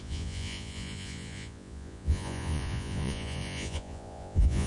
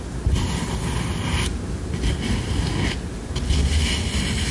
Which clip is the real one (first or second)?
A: second